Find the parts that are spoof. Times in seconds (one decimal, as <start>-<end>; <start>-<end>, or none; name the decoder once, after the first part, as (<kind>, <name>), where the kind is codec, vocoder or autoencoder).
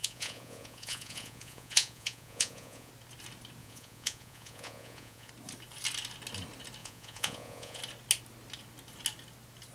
0.0-2.9 (vocoder, Vocos); 3.6-5.3; 6.8-7.8